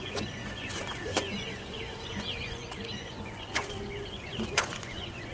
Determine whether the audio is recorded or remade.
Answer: remade